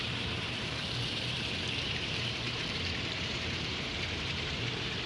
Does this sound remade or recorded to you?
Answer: remade